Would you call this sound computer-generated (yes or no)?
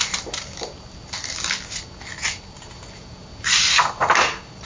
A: no